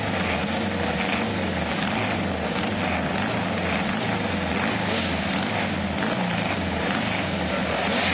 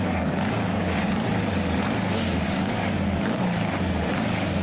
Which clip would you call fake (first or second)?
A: second